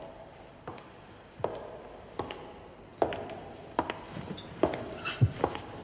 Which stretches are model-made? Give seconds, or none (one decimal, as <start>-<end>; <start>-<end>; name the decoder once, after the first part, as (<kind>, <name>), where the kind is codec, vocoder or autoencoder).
none